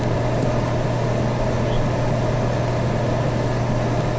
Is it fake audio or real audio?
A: real